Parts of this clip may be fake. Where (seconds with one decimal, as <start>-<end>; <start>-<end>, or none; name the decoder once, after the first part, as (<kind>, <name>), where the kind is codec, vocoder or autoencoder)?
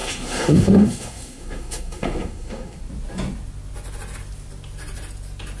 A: 0.0-2.8 (codec, SNAC)